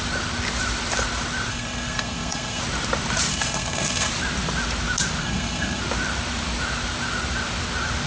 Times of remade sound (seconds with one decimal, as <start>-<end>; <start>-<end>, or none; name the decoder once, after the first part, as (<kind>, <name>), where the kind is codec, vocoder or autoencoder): 1.5-2.6 (codec, SNAC); 3.3-4.1; 5.2-5.8